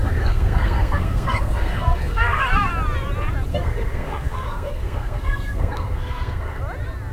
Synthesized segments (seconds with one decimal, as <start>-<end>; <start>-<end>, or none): 0.0-2.7; 3.5-6.6